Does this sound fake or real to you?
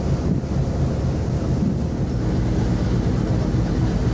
real